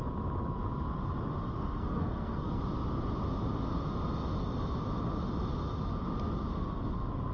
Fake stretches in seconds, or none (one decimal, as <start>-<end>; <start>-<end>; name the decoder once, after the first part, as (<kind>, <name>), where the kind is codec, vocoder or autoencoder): 1.6-2.6 (codec, SNAC)